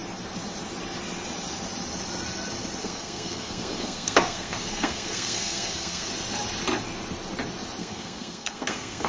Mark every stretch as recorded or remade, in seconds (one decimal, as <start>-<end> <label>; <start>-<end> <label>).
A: 0.0-2.8 recorded; 2.8-6.1 remade; 6.1-7.8 recorded; 7.8-9.1 remade